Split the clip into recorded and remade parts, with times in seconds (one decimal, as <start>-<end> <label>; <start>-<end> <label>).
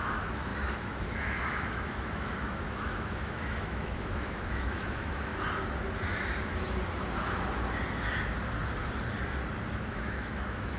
0.0-5.3 remade; 5.3-9.9 recorded; 9.9-10.8 remade